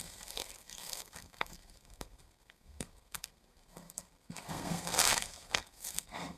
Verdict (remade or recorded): remade